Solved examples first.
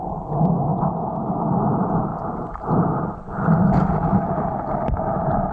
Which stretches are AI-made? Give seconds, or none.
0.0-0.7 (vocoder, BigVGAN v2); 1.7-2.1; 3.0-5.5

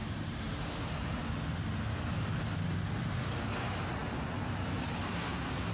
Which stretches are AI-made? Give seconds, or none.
0.0-1.2 (vocoder, BigVGAN v2)

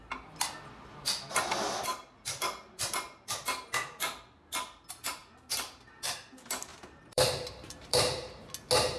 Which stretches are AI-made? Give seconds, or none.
5.2-6.3 (vocoder, BigVGAN v2); 6.7-8.4